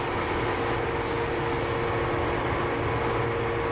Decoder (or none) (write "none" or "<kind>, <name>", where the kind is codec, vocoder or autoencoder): none